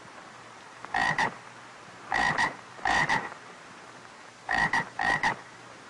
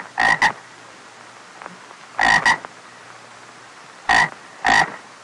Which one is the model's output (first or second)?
first